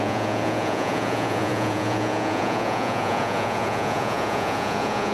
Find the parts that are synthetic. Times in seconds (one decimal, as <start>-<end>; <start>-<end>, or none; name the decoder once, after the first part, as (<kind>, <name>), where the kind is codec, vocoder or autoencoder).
0.0-5.1 (vocoder, Vocos)

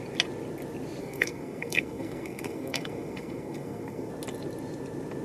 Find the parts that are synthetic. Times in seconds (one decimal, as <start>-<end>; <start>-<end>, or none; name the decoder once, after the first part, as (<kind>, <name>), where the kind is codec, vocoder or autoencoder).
1.0-4.1 (codec, SNAC)

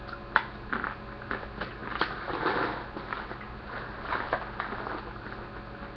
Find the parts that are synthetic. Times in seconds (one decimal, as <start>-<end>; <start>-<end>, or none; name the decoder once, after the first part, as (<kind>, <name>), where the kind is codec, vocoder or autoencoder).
none

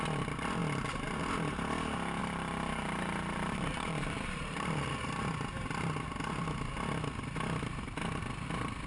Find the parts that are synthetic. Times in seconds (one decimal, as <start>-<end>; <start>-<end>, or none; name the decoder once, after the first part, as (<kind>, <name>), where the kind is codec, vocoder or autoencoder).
2.2-5.0 (vocoder, BigVGAN v2)

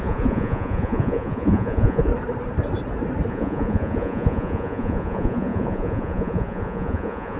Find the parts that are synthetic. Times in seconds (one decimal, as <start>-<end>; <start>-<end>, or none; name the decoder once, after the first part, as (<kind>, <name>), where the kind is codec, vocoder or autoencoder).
0.0-2.1 (vocoder, Vocos); 3.3-7.4

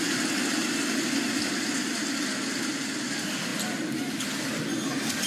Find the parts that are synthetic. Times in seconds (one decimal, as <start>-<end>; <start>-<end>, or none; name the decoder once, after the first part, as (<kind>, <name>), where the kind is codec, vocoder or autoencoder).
none

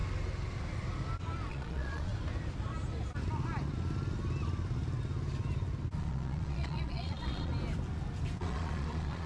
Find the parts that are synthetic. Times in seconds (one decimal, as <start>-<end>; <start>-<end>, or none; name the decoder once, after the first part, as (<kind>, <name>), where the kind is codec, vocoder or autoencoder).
1.5-2.1 (vocoder, Vocos); 6.0-7.5; 8.4-9.3